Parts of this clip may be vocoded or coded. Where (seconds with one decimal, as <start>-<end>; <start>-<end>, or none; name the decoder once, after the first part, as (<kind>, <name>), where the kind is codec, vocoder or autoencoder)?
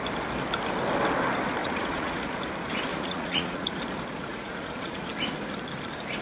1.6-2.4 (vocoder, Vocos); 2.9-3.8; 4.3-5.1